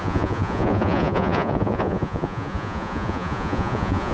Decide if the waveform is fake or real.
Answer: fake